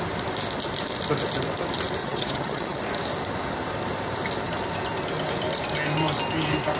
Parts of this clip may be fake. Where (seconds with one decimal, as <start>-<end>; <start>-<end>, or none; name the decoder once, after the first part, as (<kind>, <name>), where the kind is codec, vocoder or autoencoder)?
2.0-2.8 (vocoder, HiFi-GAN)